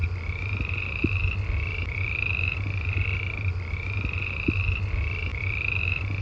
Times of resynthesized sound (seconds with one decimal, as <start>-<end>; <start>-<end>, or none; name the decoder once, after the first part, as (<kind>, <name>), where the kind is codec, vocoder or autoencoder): none